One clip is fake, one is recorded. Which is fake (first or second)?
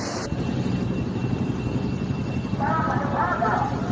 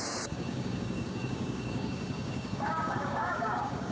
second